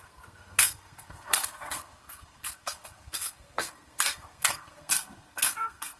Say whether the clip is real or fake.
fake